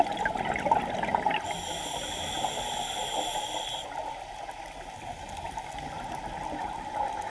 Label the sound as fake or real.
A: real